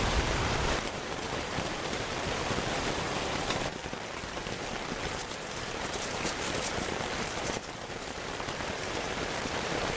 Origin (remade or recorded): remade